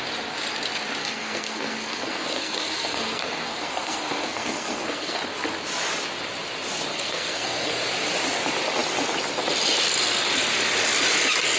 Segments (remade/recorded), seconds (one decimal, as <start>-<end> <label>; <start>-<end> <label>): 0.0-1.0 recorded; 1.0-5.2 remade; 5.2-6.9 recorded; 6.9-7.7 remade; 7.7-11.6 recorded